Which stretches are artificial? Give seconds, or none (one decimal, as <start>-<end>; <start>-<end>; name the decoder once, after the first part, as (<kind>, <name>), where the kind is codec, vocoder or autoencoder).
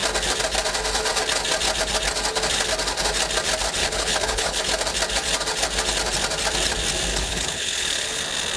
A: 3.8-4.6 (codec, HILCodec); 7.1-8.2